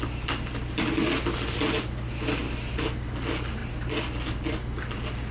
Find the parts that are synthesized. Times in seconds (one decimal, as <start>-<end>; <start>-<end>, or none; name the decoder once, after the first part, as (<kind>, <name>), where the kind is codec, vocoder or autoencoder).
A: none